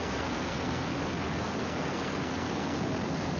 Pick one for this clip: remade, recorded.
remade